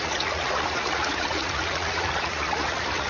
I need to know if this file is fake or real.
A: fake